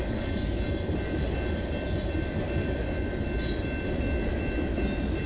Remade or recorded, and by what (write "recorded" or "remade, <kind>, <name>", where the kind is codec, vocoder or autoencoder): recorded